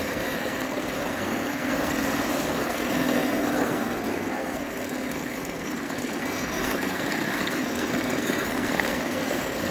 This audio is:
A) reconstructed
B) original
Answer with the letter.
A